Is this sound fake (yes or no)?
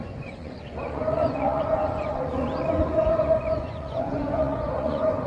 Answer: yes